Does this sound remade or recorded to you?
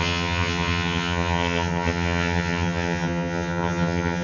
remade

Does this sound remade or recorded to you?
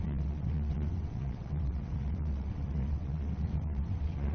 remade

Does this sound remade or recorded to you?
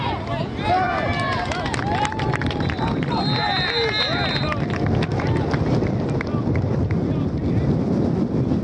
recorded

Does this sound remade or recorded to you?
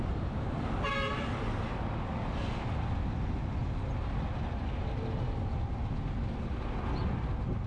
recorded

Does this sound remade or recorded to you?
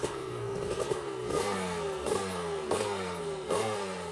remade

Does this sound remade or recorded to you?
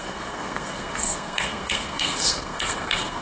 remade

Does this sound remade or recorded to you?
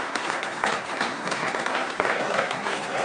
remade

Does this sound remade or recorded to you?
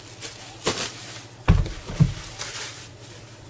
recorded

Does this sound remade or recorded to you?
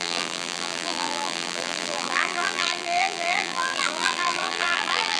remade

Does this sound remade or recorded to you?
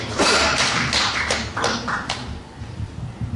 remade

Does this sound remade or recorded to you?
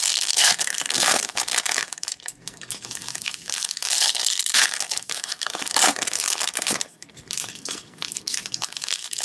remade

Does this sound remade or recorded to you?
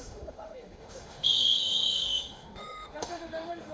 remade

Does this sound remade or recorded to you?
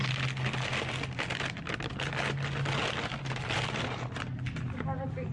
recorded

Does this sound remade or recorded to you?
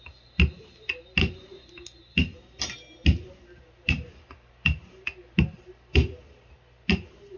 recorded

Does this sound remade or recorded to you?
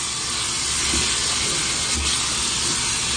recorded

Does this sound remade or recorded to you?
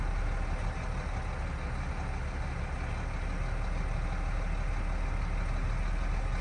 recorded